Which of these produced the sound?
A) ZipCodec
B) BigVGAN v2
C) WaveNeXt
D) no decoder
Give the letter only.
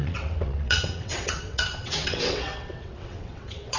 C